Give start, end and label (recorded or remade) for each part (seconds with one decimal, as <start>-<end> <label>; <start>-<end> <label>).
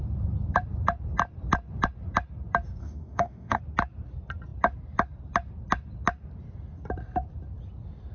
0.0-2.8 recorded; 2.8-3.6 remade; 3.6-8.1 recorded